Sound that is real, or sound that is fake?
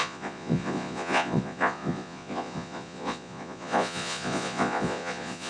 fake